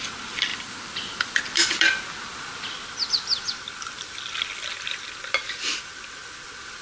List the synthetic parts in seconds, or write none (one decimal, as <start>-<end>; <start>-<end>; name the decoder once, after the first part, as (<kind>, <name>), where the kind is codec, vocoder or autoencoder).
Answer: 0.5-1.4 (vocoder, BigVGAN v2)

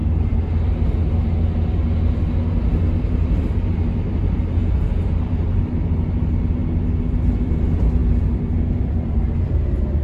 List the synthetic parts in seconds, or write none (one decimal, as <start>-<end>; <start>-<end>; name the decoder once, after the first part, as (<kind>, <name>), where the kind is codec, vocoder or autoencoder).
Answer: 3.0-6.6 (vocoder, BigVGAN v2); 7.2-10.0

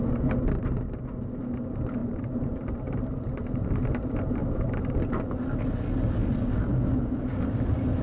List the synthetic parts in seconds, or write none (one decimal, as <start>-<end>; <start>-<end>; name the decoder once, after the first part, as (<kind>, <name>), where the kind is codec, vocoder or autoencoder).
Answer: 2.0-5.1 (vocoder, BigVGAN v2)

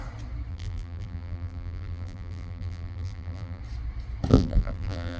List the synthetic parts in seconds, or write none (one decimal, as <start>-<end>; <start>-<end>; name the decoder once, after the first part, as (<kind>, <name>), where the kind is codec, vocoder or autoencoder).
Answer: 0.5-3.6 (vocoder, BigVGAN v2); 4.3-5.2

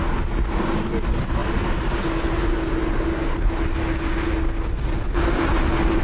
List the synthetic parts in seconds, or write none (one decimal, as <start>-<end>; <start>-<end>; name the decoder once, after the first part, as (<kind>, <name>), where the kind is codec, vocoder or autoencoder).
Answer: none

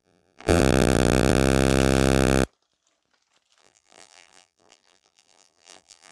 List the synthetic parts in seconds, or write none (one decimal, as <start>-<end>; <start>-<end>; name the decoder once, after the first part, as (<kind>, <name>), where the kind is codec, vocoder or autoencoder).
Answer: 0.0-0.6 (vocoder, BigVGAN v2); 3.6-6.1